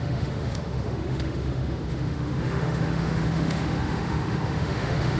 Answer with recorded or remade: remade